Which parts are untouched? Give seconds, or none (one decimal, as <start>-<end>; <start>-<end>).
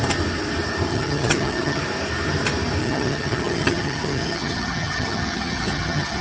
0.0-0.9; 1.8-2.8